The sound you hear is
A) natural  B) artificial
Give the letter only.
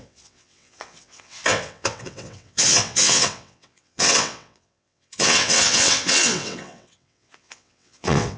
B